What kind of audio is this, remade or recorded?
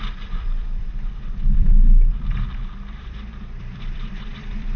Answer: remade